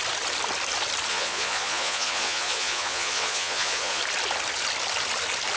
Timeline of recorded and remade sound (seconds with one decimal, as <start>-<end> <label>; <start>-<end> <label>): 0.0-1.1 recorded; 1.1-4.0 remade; 4.0-5.6 recorded